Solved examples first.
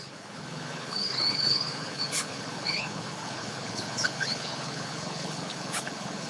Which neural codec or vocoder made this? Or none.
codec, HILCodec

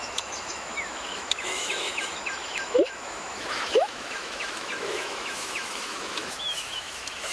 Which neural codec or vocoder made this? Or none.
autoencoder, DAC-VAE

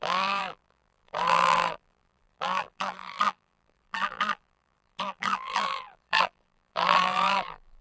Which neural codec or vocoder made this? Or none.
vocoder, BigVGAN v2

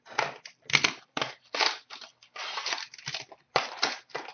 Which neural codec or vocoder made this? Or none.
vocoder, BigVGAN v2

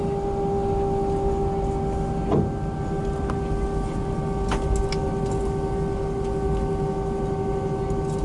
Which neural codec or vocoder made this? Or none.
none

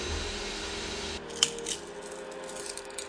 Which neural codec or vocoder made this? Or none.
none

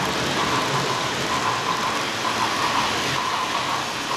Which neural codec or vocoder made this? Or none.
none